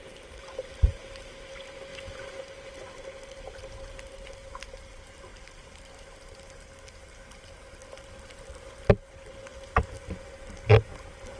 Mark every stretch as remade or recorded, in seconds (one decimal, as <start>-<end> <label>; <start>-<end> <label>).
0.0-11.4 recorded